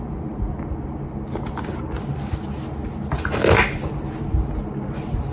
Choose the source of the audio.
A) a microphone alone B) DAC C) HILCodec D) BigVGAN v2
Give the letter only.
A